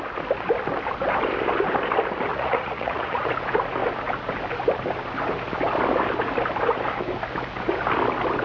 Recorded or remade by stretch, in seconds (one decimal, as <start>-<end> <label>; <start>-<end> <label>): 0.0-2.3 recorded; 2.3-3.3 remade; 3.3-8.4 recorded